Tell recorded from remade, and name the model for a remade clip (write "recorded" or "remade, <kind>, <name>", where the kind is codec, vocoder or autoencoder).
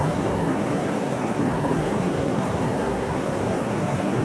remade, codec, SNAC